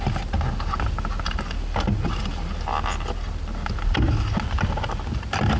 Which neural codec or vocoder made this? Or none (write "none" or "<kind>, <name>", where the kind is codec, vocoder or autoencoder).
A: none